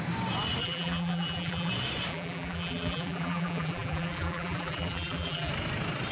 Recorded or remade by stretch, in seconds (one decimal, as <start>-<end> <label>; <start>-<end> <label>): 0.0-0.6 recorded; 0.6-1.7 remade; 1.7-2.1 recorded; 2.1-5.5 remade; 5.5-6.1 recorded